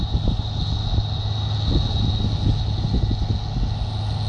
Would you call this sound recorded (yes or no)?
yes